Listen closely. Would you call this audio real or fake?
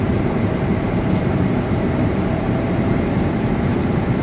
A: fake